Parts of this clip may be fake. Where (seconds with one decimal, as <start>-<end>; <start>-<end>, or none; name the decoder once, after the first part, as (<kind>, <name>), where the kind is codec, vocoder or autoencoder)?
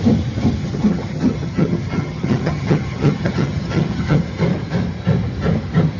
0.6-4.2 (vocoder, HiFi-GAN)